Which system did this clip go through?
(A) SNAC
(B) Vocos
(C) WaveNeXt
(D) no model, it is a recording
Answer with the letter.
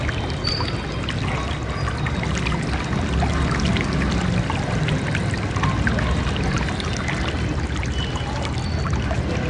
D